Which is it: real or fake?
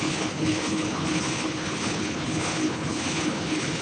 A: fake